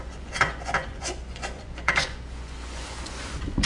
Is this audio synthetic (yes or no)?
yes